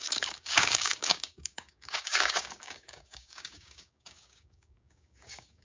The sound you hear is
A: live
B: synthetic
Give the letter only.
B